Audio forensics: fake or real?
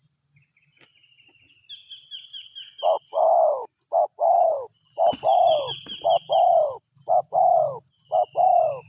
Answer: real